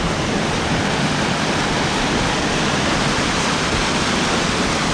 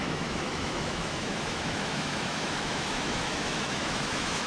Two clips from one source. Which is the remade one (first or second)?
second